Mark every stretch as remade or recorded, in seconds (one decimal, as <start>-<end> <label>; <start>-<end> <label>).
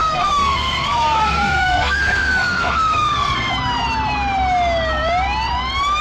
0.0-3.5 remade; 3.5-6.0 recorded